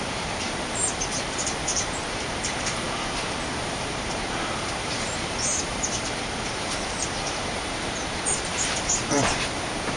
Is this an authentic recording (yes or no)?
no